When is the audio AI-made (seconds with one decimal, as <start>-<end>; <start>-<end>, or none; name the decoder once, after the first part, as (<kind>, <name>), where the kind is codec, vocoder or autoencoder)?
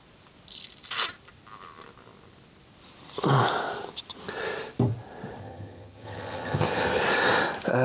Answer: 5.4-7.0 (vocoder, HiFi-GAN)